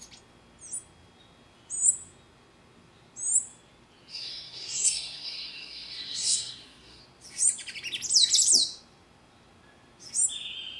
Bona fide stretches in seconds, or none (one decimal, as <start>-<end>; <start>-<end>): 0.0-4.1; 7.0-10.8